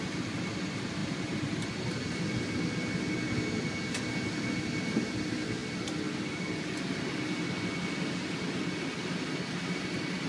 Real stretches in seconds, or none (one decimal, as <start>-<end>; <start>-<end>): 0.0-10.3